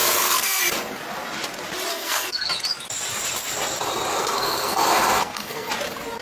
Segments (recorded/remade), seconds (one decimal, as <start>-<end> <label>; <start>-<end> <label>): 0.0-0.6 remade; 0.6-1.9 recorded; 1.9-2.5 remade; 2.5-4.1 recorded; 4.1-5.7 remade; 5.7-6.2 recorded